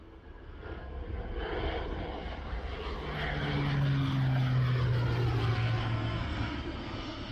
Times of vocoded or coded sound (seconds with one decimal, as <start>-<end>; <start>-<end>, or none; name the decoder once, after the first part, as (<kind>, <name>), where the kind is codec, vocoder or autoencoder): 0.0-1.0 (codec, SNAC); 5.4-7.3